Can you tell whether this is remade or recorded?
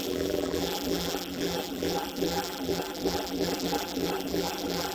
remade